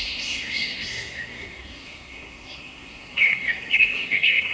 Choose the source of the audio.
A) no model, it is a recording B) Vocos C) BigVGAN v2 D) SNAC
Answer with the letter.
D